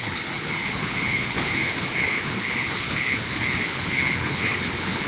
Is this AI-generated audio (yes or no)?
yes